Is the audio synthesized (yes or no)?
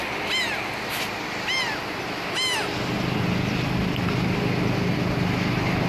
no